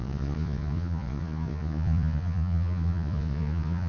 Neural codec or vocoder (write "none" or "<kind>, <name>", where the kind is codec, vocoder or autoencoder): vocoder, Vocos